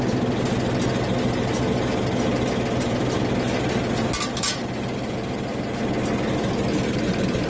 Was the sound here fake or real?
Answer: real